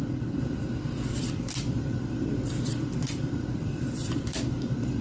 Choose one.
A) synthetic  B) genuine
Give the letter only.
A